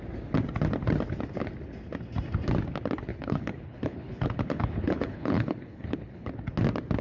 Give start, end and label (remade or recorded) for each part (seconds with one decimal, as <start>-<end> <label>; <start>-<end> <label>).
0.0-3.1 recorded; 3.1-6.3 remade; 6.3-7.0 recorded